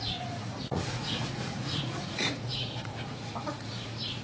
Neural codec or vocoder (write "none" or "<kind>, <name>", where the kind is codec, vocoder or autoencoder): vocoder, Vocos